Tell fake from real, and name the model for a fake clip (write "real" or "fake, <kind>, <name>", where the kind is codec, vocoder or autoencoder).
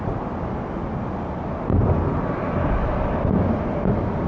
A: real